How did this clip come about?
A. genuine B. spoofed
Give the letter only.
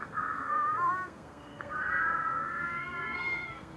B